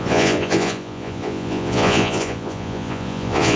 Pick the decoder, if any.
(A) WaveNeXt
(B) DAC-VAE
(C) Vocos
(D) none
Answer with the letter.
C